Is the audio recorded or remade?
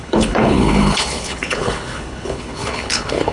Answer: remade